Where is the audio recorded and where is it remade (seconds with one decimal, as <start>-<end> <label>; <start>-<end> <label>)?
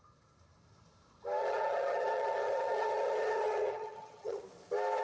0.0-1.4 recorded; 1.4-4.4 remade; 4.4-5.0 recorded